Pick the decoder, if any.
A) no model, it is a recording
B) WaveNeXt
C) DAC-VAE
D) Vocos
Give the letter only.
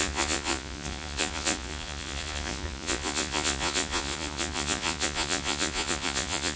D